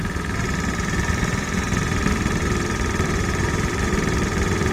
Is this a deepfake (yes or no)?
yes